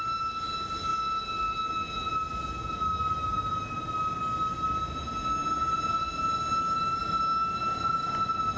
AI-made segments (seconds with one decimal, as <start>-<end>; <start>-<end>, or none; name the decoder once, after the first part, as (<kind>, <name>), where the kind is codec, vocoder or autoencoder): none